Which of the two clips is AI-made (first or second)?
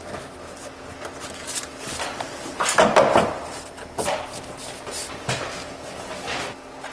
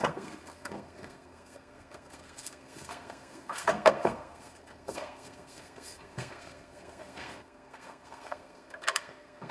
second